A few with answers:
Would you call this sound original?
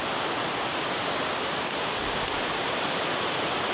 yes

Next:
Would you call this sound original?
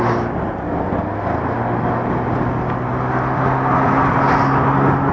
yes